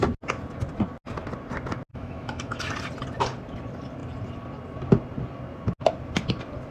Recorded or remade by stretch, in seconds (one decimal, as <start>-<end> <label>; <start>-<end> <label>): 0.0-1.9 recorded; 1.9-2.7 remade; 2.7-6.7 recorded